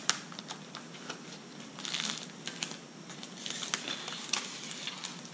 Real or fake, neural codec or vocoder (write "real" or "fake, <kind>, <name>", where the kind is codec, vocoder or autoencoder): real